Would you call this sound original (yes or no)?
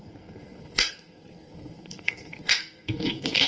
no